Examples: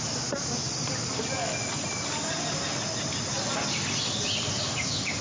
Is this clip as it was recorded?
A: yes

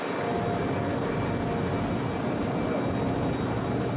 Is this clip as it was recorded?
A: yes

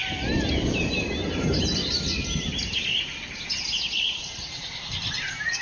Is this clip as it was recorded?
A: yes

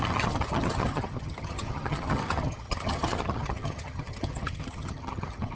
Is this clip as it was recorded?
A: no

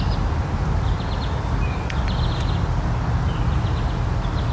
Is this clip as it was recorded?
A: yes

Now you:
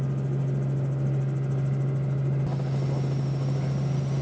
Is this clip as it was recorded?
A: yes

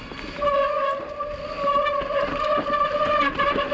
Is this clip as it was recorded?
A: yes